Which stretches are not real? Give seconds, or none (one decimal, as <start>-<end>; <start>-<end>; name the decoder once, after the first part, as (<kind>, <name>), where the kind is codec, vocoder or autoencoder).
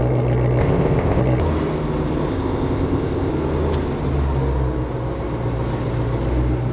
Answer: 0.6-1.2 (codec, ZipCodec); 2.3-3.3